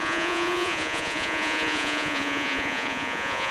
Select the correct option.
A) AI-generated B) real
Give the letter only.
A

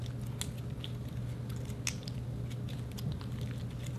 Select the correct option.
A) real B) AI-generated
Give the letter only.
A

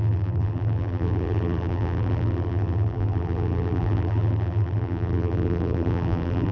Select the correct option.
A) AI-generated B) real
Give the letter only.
A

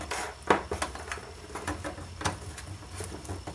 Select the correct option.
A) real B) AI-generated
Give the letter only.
A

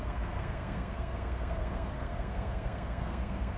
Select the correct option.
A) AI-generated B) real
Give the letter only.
A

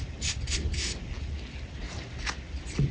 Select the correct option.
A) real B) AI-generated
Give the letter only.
A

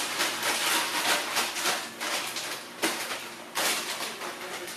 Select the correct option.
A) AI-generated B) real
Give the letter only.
B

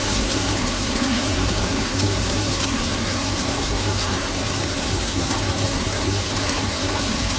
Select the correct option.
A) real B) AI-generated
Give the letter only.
B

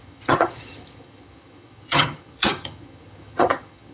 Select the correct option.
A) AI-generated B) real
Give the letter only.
A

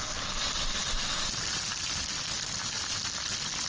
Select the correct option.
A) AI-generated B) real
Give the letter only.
B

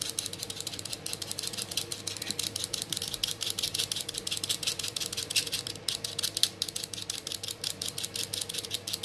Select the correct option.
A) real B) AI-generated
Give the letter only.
B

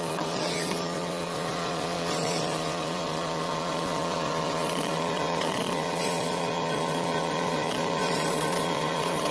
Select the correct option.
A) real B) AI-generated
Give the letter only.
B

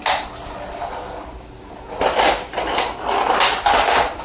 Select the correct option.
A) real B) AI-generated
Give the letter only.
A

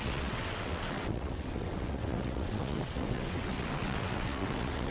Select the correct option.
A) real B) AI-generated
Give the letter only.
B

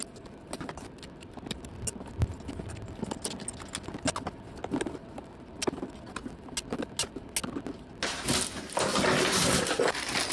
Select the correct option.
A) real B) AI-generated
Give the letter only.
A